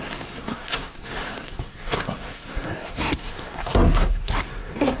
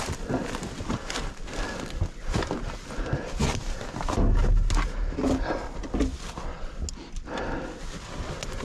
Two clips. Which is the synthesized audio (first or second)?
first